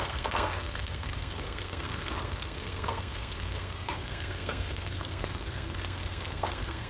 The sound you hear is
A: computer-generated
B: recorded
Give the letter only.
A